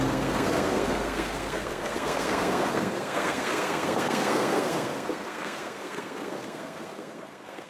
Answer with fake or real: fake